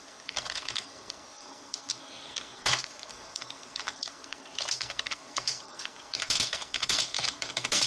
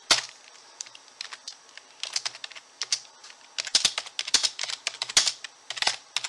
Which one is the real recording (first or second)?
second